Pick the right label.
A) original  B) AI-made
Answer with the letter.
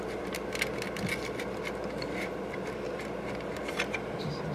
A